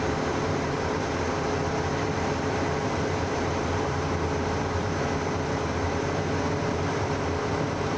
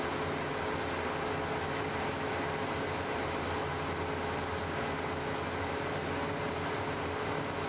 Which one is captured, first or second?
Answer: second